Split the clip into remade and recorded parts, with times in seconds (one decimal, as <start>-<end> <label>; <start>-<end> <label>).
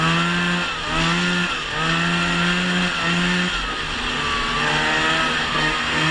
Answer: 0.0-5.4 recorded; 5.4-6.1 remade